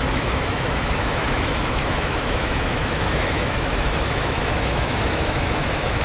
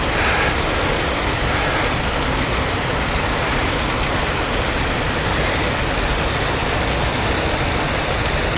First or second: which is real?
second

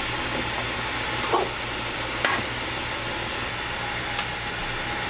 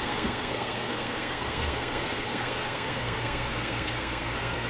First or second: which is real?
first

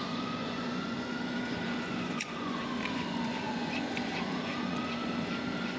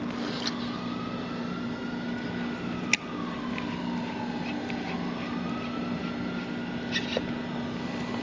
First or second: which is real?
second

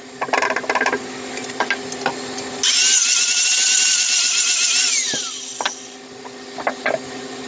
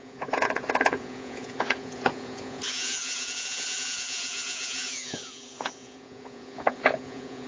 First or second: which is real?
first